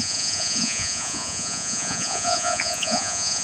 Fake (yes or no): yes